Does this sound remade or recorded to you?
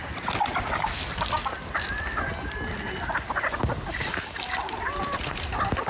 recorded